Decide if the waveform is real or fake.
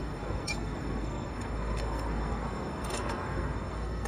fake